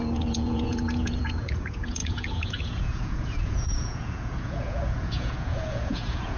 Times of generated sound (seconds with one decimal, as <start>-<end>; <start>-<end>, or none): 0.0-6.4